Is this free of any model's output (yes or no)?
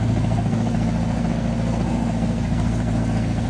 no